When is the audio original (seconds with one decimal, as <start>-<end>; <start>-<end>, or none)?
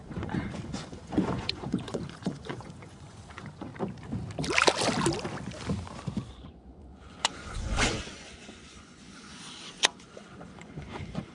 3.7-6.3